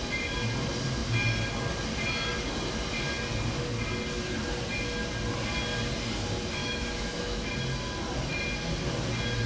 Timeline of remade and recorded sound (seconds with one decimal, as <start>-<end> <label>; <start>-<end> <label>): 0.0-6.6 recorded; 6.6-7.5 remade; 7.5-9.5 recorded